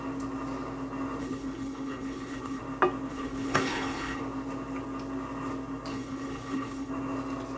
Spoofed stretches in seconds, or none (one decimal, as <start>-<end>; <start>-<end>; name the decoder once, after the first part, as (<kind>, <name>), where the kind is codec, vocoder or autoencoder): 1.2-2.6 (codec, HILCodec); 3.1-4.2; 5.9-6.9